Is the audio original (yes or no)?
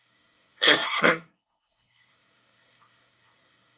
no